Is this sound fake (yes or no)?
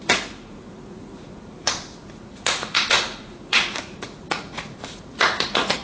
yes